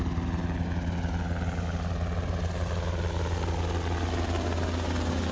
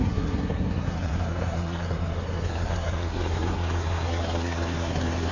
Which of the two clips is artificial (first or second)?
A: second